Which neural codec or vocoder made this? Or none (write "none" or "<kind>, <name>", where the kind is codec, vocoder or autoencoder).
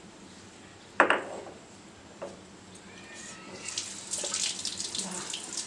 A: vocoder, BigVGAN v2